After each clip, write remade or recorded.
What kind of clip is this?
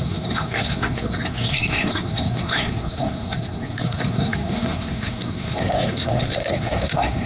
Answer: remade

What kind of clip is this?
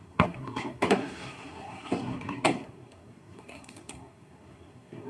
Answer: remade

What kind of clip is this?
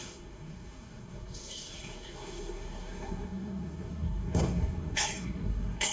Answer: remade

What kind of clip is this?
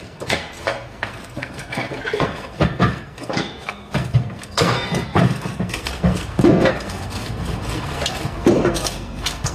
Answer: remade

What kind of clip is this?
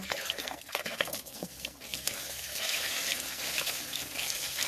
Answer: remade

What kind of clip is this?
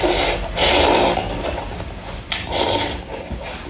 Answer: recorded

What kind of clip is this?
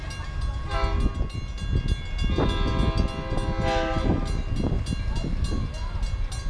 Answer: recorded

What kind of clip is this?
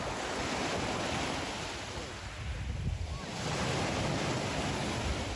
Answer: recorded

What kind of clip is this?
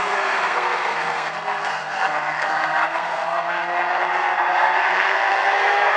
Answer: remade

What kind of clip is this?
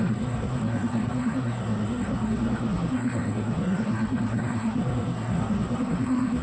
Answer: remade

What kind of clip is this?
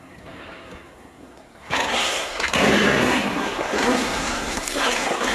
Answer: remade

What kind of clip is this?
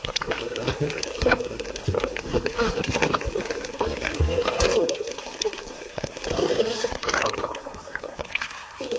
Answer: remade